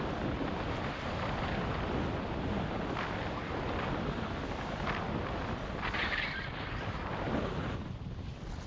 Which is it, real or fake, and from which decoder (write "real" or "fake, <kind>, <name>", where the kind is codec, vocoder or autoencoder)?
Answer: real